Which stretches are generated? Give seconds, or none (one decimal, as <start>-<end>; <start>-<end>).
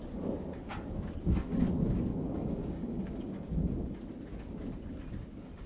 2.1-4.0